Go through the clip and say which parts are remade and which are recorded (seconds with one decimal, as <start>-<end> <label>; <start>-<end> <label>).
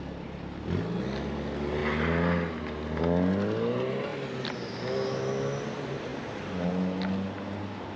0.0-8.0 recorded